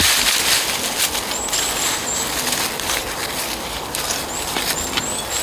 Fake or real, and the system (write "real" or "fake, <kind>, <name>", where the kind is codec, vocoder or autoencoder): real